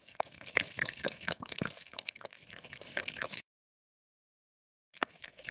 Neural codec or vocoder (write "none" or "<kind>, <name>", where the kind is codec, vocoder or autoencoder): codec, SNAC